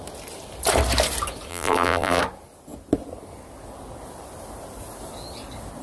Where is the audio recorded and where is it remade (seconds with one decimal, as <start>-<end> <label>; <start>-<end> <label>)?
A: 0.0-1.5 recorded; 1.5-2.2 remade; 2.2-5.8 recorded